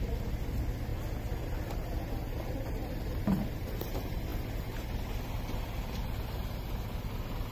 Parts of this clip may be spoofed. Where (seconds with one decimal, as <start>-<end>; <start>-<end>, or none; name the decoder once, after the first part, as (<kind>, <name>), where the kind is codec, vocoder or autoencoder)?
none

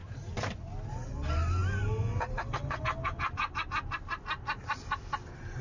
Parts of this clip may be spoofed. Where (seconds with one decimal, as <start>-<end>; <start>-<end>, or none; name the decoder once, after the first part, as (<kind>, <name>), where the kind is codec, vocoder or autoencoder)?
0.0-0.6 (vocoder, BigVGAN v2)

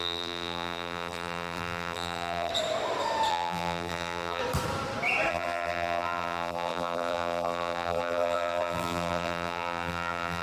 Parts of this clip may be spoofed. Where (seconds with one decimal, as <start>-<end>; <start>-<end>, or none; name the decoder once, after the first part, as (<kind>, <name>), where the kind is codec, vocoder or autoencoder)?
0.0-2.5 (vocoder, BigVGAN v2); 3.3-4.4; 5.3-10.4

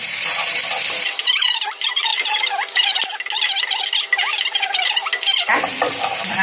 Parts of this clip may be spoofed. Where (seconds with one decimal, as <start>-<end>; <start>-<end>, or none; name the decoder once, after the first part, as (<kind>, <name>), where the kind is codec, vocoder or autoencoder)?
0.0-0.6 (vocoder, BigVGAN v2); 1.2-2.1; 5.6-6.4

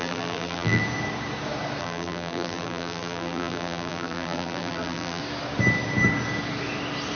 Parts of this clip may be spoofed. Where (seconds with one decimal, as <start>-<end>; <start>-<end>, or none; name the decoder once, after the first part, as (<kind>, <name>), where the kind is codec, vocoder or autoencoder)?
0.0-0.8 (vocoder, BigVGAN v2); 1.8-5.2

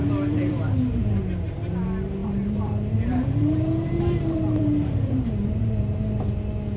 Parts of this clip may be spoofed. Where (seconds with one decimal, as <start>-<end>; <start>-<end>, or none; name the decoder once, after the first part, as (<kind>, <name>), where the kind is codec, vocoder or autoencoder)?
0.0-1.2 (vocoder, BigVGAN v2); 2.2-6.3

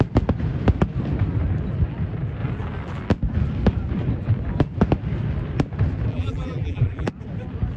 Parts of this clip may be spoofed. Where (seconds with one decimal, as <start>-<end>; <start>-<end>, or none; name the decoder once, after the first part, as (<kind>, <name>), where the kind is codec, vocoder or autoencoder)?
6.1-7.1 (vocoder, BigVGAN v2)